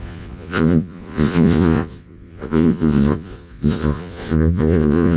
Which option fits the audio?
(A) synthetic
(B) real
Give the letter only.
A